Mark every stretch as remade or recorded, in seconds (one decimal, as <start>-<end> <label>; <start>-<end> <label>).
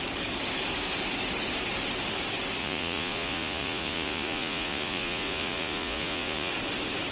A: 0.0-2.6 recorded; 2.6-6.5 remade; 6.5-7.1 recorded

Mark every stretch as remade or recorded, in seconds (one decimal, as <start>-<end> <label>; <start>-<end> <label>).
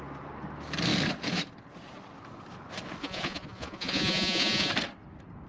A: 0.0-3.0 recorded; 3.0-4.7 remade; 4.7-5.5 recorded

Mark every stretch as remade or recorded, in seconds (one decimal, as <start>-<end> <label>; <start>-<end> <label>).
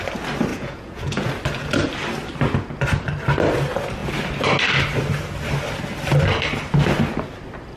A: 0.0-0.5 recorded; 0.5-1.3 remade; 1.3-7.8 recorded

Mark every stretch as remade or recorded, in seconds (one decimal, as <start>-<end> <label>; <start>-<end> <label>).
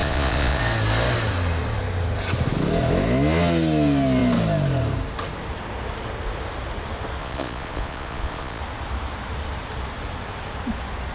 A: 0.0-0.6 remade; 0.6-7.2 recorded; 7.2-8.6 remade; 8.6-11.1 recorded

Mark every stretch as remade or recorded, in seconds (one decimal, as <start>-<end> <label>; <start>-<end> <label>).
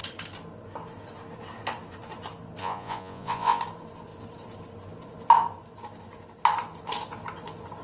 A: 0.0-2.6 recorded; 2.6-3.6 remade; 3.6-7.8 recorded